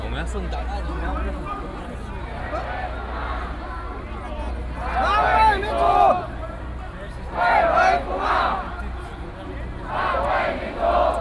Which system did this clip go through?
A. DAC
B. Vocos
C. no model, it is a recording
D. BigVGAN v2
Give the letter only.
C